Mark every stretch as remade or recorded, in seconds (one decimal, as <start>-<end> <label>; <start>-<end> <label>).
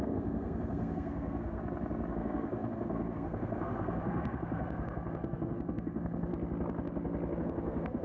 0.0-1.6 remade; 1.6-2.1 recorded; 2.1-6.3 remade; 6.3-7.4 recorded; 7.4-8.0 remade